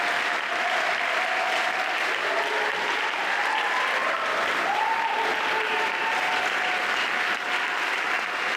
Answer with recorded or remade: recorded